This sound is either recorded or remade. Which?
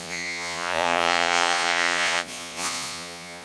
remade